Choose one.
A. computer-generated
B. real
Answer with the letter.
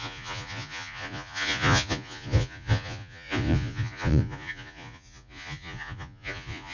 A